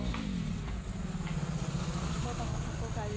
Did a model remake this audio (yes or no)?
no